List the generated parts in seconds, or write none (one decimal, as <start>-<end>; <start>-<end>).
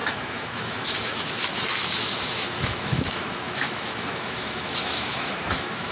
0.0-5.9